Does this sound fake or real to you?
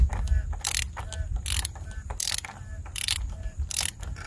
real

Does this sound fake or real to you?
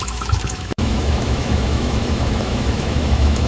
fake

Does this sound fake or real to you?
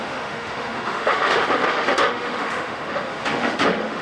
fake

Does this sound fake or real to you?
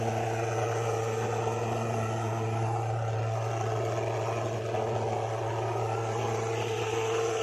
real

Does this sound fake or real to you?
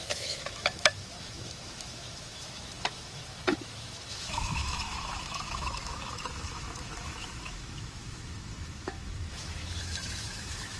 fake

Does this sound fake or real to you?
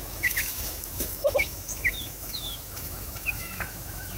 fake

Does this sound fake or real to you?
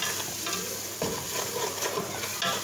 real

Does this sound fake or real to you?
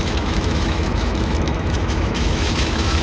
fake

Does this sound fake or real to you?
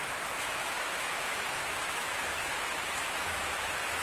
fake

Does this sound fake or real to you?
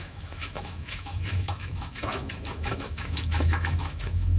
fake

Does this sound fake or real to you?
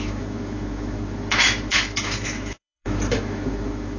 fake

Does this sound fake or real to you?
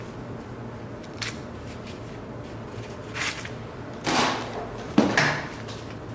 real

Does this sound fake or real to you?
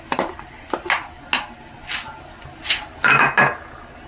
real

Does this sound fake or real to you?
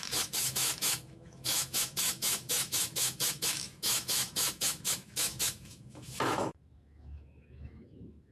fake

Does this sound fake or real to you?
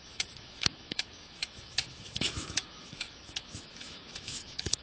fake